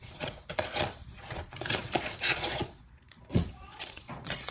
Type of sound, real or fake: fake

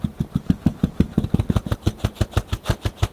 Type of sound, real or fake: real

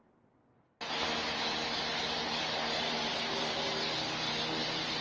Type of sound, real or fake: real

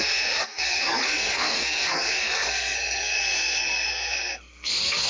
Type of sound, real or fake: fake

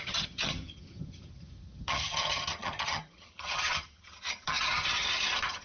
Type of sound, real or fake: fake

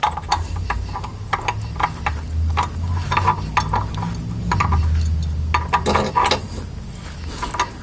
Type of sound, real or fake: real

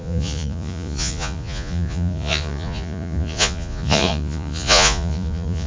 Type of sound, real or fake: fake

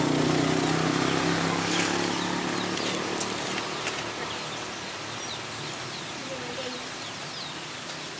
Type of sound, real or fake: real